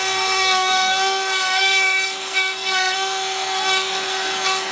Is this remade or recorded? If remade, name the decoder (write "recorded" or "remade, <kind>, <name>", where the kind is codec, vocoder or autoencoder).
remade, codec, SNAC